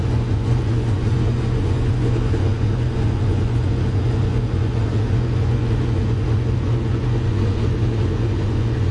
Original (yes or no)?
no